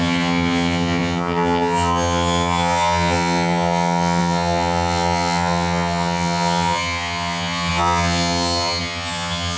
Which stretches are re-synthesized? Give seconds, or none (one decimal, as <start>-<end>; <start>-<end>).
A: 0.0-9.6